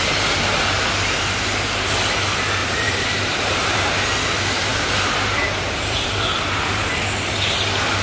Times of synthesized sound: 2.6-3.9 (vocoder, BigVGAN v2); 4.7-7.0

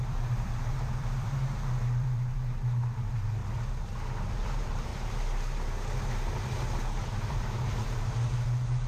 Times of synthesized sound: 0.0-3.4 (vocoder, BigVGAN v2); 4.3-4.9; 7.1-8.9

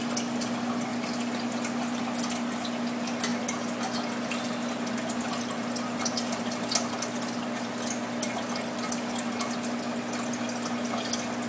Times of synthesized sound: 0.9-2.0 (vocoder, BigVGAN v2)

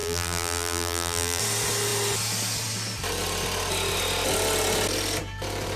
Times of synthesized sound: 0.0-1.4 (vocoder, BigVGAN v2)